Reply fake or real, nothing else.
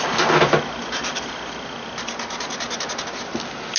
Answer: real